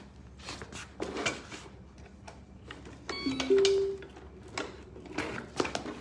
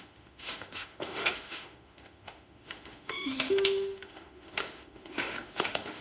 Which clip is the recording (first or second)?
first